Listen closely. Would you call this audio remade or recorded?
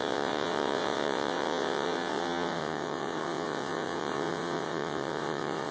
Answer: remade